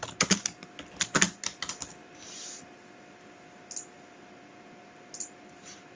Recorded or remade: recorded